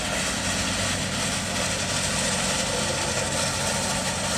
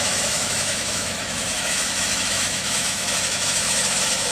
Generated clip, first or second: second